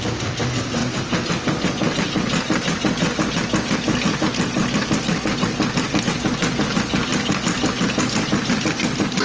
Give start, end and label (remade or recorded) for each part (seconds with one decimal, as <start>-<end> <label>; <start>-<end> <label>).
0.0-9.2 recorded